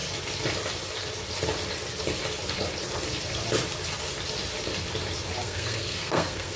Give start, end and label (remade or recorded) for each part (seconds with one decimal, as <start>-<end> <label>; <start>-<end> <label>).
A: 0.0-5.4 recorded; 5.4-6.6 remade